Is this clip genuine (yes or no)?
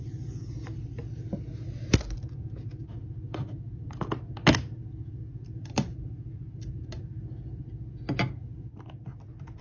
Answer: yes